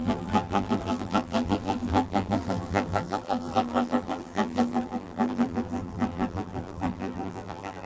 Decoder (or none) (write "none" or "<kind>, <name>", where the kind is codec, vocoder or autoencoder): vocoder, BigVGAN v2